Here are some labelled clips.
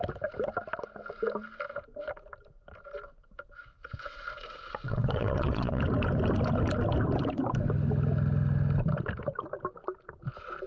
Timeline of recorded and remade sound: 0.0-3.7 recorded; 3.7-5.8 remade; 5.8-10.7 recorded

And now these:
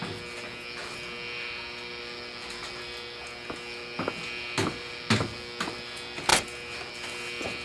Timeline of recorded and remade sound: 0.0-7.6 recorded

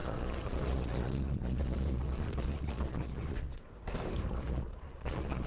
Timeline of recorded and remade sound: 0.0-3.7 remade; 3.7-4.3 recorded; 4.3-5.5 remade

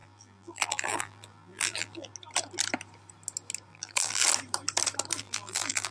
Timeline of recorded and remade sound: 0.0-2.1 remade; 2.1-3.7 recorded; 3.7-4.2 remade; 4.2-5.2 recorded; 5.2-5.9 remade

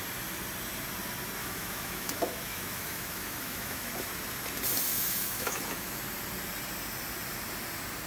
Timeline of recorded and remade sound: 0.0-1.4 recorded; 1.4-3.9 remade; 3.9-4.9 recorded; 4.9-6.0 remade; 6.0-8.1 recorded

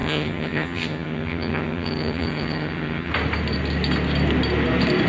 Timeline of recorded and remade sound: 0.0-3.1 remade; 3.1-5.1 recorded